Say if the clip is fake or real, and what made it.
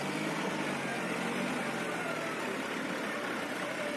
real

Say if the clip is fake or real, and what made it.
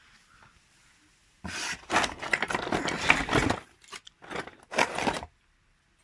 real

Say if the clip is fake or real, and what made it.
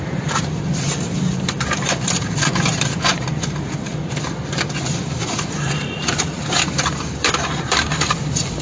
fake, vocoder, BigVGAN v2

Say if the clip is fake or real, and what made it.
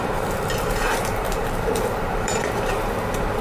fake, vocoder, BigVGAN v2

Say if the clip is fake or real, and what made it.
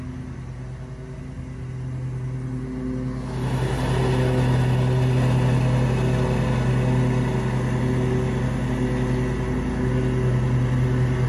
real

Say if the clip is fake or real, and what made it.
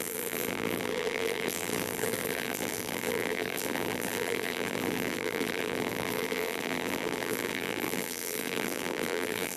fake, vocoder, BigVGAN v2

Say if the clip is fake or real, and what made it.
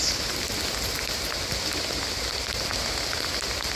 real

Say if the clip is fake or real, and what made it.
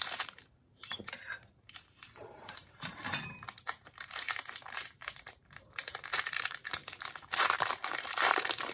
fake, vocoder, BigVGAN v2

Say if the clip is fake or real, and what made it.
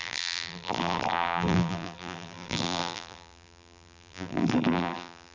fake, vocoder, BigVGAN v2